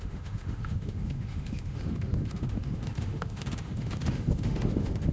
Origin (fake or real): fake